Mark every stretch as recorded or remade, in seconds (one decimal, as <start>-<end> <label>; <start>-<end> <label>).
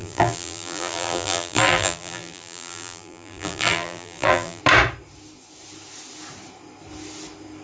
0.0-4.6 remade; 4.6-7.6 recorded